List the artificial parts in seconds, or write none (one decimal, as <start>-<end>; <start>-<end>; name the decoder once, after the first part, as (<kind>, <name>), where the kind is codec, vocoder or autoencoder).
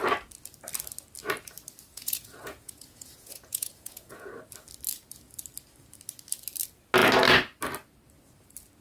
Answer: 1.9-4.3 (vocoder, Vocos)